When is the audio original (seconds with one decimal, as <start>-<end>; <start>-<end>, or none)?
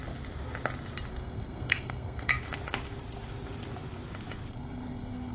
0.0-1.1; 2.3-4.5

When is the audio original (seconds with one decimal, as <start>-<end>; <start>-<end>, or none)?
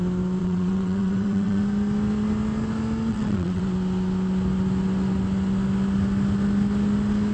0.0-0.4; 1.6-3.1; 3.6-7.3